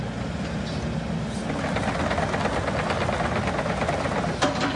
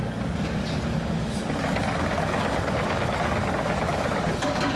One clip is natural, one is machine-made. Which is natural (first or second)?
first